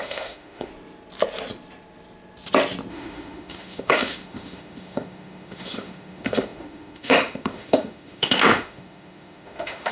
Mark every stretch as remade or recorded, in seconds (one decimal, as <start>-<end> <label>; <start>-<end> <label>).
0.0-0.7 remade; 0.7-2.9 recorded; 2.9-9.9 remade